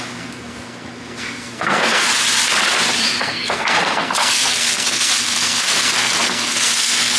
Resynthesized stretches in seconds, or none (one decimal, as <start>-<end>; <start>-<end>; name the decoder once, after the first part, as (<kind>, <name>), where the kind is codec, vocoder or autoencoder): 0.0-2.1 (codec, SNAC); 3.2-7.2